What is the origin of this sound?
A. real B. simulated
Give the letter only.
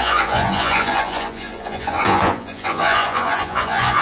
B